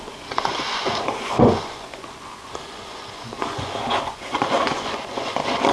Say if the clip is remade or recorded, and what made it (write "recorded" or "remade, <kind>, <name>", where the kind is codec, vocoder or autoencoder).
remade, vocoder, Vocos